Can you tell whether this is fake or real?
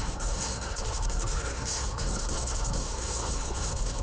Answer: fake